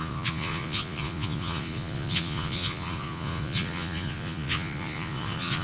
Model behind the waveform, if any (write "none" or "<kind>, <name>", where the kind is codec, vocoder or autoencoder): vocoder, Vocos